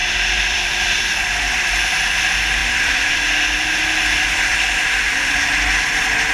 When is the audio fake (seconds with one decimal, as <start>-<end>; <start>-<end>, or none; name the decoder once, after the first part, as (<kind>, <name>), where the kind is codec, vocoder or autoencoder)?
0.0-2.2 (vocoder, BigVGAN v2); 2.6-5.4

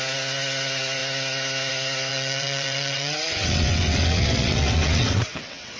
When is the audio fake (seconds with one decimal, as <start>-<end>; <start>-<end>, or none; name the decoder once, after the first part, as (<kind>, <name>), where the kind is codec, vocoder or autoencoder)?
2.1-5.8 (vocoder, WaveNeXt)

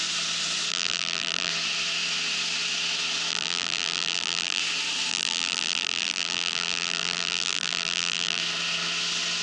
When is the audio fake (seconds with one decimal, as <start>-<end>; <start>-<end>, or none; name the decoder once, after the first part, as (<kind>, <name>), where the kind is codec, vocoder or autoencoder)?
0.7-1.5 (vocoder, BigVGAN v2); 3.3-4.6; 5.1-8.4

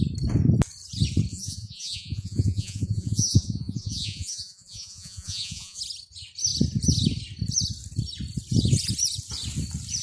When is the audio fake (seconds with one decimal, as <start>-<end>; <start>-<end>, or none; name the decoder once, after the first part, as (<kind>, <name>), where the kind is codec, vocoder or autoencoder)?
1.3-5.8 (vocoder, Vocos)

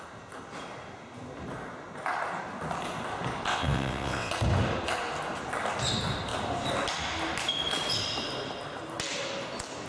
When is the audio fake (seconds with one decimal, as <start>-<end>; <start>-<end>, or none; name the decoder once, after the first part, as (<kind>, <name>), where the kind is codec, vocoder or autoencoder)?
3.5-4.3 (vocoder, WaveNeXt)

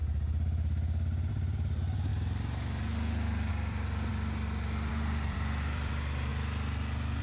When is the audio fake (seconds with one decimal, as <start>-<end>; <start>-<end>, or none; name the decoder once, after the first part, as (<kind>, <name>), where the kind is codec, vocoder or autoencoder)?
1.3-2.1 (vocoder, BigVGAN v2); 3.5-4.1; 4.9-6.3